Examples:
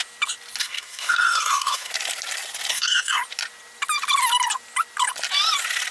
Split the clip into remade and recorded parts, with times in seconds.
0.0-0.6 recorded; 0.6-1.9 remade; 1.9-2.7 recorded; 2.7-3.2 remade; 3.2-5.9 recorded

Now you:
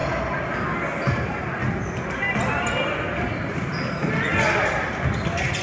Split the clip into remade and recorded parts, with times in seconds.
0.0-5.6 recorded

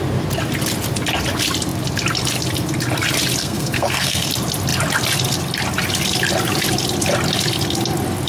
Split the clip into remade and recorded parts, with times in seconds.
0.0-3.4 recorded; 3.4-4.3 remade; 4.3-8.3 recorded

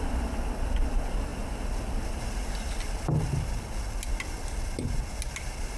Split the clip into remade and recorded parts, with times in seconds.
0.0-5.8 recorded